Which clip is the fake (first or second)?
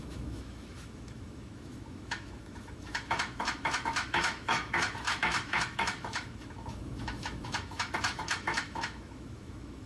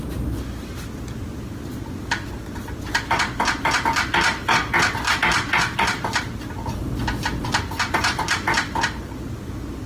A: first